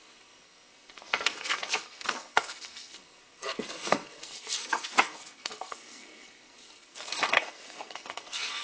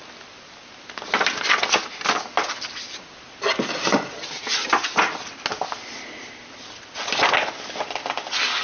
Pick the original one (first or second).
second